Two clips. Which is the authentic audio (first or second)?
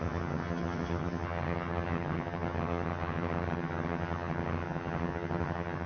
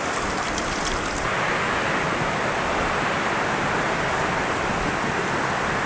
second